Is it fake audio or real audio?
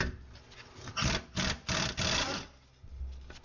real